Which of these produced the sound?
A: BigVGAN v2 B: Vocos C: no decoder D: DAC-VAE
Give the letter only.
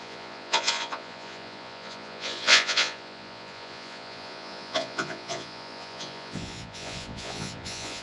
B